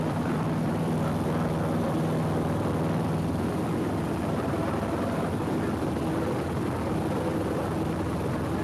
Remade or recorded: remade